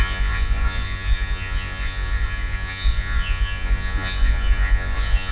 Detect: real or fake fake